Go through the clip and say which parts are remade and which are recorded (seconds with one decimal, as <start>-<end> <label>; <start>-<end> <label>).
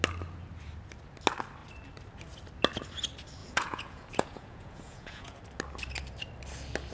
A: 0.0-3.4 recorded; 3.4-5.4 remade; 5.4-6.9 recorded